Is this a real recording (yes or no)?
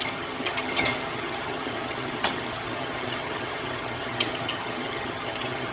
no